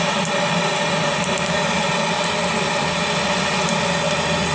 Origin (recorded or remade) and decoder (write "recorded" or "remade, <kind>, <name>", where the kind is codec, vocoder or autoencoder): recorded